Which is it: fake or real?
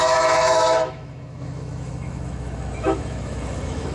fake